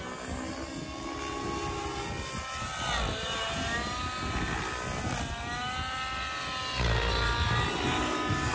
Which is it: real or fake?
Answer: real